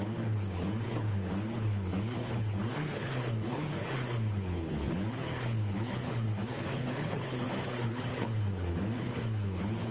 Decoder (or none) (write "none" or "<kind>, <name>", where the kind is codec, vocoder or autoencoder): codec, HILCodec